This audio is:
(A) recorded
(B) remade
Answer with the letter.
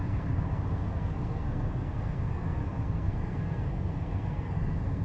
B